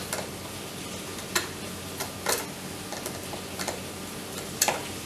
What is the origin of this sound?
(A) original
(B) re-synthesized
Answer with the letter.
A